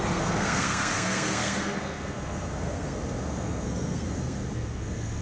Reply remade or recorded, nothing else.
remade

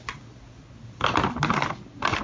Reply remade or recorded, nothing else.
recorded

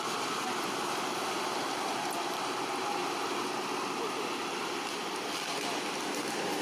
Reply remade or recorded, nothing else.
recorded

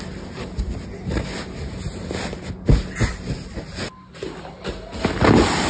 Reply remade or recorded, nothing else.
recorded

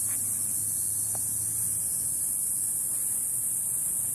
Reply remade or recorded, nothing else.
recorded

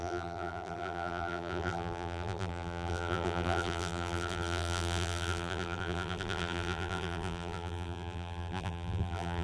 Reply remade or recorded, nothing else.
remade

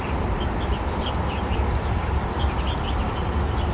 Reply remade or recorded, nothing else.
recorded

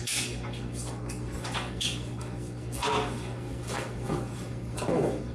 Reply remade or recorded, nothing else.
remade